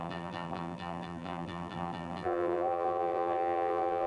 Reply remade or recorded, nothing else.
remade